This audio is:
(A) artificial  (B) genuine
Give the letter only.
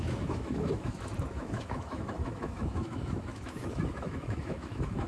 A